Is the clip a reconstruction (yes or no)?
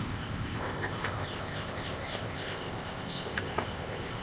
yes